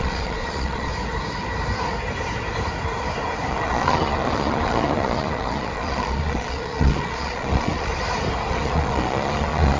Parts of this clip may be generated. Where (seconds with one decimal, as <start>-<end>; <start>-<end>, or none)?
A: 0.0-0.9; 3.5-7.9; 8.5-9.8